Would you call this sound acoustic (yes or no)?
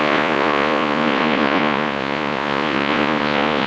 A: no